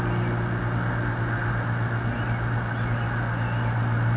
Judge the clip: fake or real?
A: real